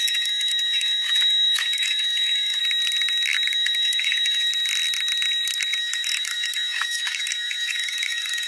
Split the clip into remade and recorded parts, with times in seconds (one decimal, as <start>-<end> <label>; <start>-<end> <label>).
0.0-2.6 remade; 2.6-3.5 recorded; 3.5-4.5 remade; 4.5-5.8 recorded; 5.8-8.5 remade